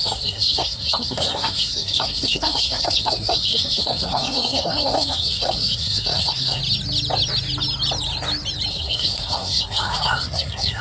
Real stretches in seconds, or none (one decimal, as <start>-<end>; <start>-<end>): 6.6-8.7